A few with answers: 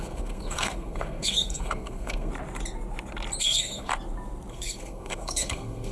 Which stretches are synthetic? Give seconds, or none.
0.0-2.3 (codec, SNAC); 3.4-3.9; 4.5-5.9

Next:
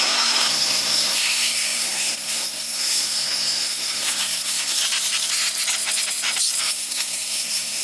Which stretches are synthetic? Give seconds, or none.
0.0-4.8 (codec, SNAC); 6.6-7.8

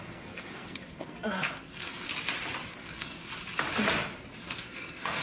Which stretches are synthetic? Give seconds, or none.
0.0-2.1 (codec, SNAC); 2.7-3.3; 4.4-5.2

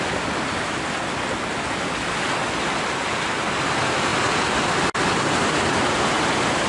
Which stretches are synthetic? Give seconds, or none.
none

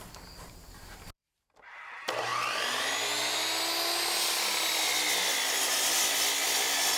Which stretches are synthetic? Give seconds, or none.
none